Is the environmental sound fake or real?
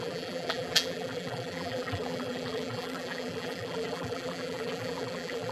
fake